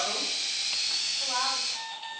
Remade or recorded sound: recorded